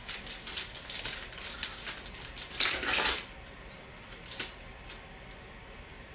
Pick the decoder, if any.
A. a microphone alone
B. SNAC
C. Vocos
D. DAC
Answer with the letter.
A